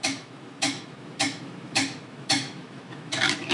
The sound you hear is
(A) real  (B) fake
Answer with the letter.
B